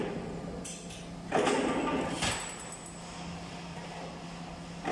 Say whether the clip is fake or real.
real